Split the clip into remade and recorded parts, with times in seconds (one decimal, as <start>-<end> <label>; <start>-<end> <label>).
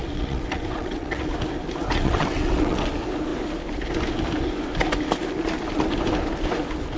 0.0-1.3 remade; 1.3-1.8 recorded; 1.8-2.9 remade; 2.9-7.0 recorded